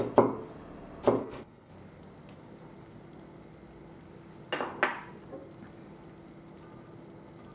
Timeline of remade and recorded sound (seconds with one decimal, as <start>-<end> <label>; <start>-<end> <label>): 0.0-1.2 recorded; 1.2-1.7 remade; 1.7-7.5 recorded